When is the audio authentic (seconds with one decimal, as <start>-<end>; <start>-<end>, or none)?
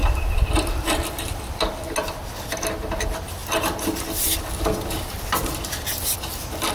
1.6-6.7